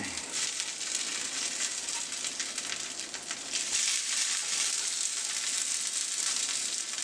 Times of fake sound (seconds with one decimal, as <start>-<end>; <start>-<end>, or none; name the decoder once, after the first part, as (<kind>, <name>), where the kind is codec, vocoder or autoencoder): none

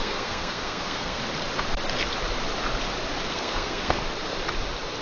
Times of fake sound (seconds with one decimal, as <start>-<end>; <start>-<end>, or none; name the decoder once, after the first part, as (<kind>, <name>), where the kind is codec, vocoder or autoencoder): 0.0-1.2 (codec, SNAC); 3.3-4.0

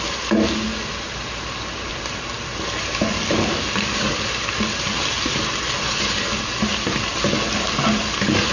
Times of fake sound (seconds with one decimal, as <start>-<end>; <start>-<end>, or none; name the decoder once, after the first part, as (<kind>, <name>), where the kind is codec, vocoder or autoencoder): 0.7-5.8 (vocoder, BigVGAN v2)

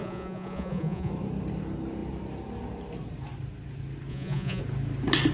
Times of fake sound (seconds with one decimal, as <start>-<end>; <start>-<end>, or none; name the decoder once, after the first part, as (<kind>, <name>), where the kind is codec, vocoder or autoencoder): 0.0-1.1 (vocoder, Vocos); 4.1-4.6

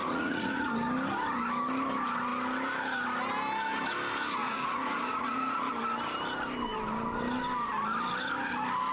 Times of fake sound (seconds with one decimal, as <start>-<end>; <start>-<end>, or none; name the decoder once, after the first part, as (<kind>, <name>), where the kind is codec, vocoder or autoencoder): 0.0-0.7 (vocoder, Vocos); 4.4-5.7

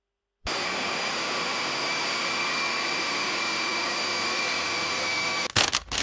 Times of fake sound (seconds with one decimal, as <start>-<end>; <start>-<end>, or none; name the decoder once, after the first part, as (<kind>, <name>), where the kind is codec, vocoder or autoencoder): none

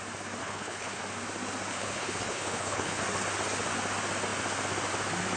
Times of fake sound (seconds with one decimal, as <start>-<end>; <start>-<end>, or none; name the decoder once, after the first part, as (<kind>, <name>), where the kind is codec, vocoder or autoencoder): 0.4-1.0 (codec, HILCodec); 1.7-3.0

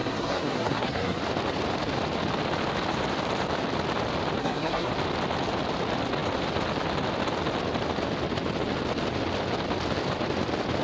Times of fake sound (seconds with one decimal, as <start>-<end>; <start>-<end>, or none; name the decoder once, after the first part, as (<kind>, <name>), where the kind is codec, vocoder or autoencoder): 0.0-1.2 (codec, SNAC); 4.4-4.9